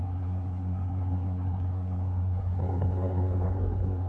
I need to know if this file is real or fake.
fake